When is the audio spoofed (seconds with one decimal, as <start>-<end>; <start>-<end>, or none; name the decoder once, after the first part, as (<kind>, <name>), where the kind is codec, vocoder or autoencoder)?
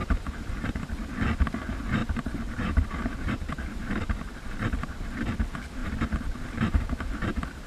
0.0-0.7 (vocoder, BigVGAN v2); 2.0-4.4; 5.8-7.1